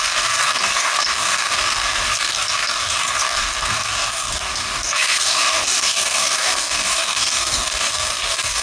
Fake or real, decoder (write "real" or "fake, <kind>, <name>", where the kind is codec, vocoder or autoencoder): fake, codec, DAC